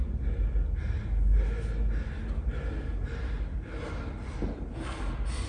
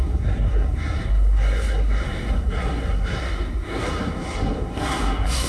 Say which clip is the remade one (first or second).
second